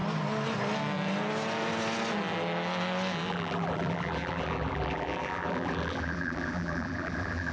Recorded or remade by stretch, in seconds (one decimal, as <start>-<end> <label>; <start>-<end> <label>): 0.0-3.3 recorded; 3.3-7.5 remade